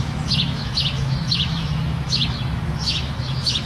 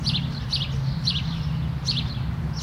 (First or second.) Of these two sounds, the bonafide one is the second